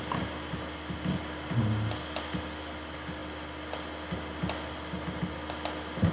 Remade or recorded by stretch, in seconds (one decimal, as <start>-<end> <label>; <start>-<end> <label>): 0.0-6.1 recorded